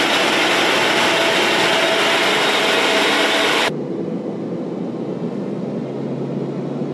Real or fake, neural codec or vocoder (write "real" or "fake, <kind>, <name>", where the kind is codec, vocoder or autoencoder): real